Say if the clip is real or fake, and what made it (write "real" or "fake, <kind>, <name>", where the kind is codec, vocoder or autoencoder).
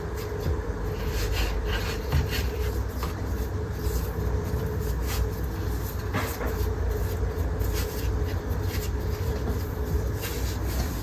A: real